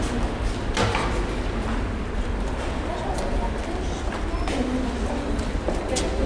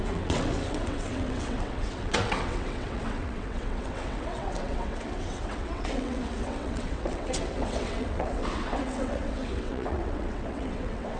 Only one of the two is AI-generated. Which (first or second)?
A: second